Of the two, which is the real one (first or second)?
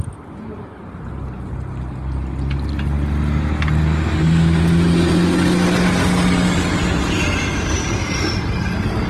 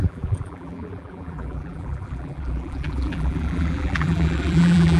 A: first